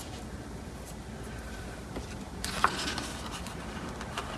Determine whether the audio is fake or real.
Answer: real